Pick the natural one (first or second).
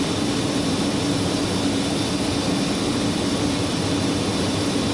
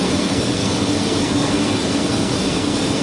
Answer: first